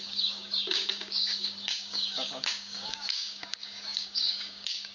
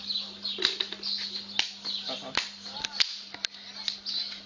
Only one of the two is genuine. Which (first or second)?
second